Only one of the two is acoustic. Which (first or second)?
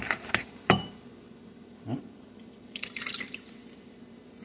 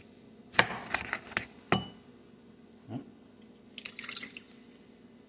second